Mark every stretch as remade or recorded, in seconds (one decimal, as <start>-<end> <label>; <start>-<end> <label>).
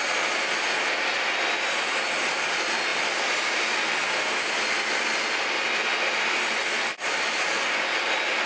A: 0.0-8.5 recorded